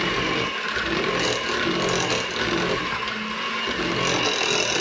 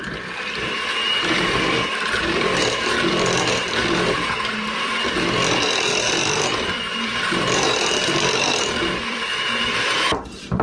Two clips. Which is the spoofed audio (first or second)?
second